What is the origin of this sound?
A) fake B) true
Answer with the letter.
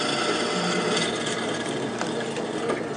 B